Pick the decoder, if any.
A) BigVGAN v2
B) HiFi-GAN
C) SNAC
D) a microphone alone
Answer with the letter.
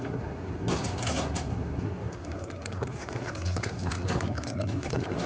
C